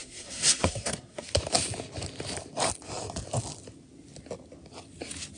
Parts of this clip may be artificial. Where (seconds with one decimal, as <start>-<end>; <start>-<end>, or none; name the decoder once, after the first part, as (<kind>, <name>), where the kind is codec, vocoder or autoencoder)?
0.0-1.3 (codec, SNAC)